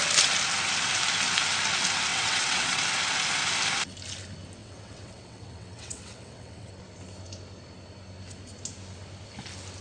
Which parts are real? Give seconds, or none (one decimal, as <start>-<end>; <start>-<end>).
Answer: 0.0-2.1; 2.8-4.6; 6.7-9.8